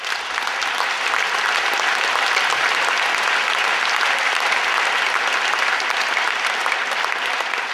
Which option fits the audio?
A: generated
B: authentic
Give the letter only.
B